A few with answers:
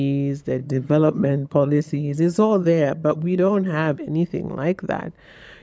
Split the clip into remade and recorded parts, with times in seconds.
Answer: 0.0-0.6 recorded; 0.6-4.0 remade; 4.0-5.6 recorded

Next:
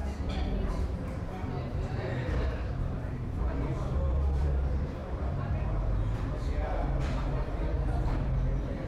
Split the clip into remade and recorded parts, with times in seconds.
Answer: 0.0-0.7 recorded; 0.7-8.9 remade

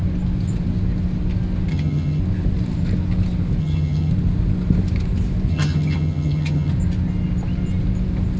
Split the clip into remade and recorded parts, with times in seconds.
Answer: 0.0-1.7 recorded; 1.7-2.2 remade; 2.2-3.6 recorded; 3.6-4.1 remade; 4.1-5.5 recorded; 5.5-6.7 remade; 6.7-8.4 recorded

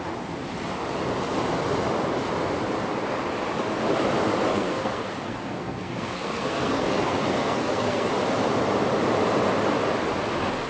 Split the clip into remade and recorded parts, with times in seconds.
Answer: 0.0-4.5 recorded; 4.5-8.1 remade; 8.1-10.7 recorded

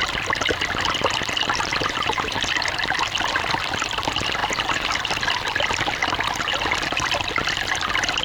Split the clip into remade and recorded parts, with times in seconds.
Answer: 0.0-1.7 recorded; 1.7-2.4 remade; 2.4-4.4 recorded; 4.4-4.9 remade; 4.9-8.2 recorded

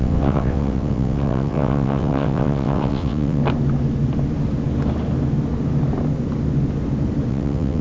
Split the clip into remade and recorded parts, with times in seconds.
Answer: 0.0-3.4 remade; 3.4-7.3 recorded; 7.3-7.8 remade